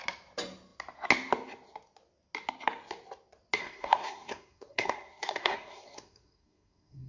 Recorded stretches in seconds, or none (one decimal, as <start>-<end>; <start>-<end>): 0.0-3.6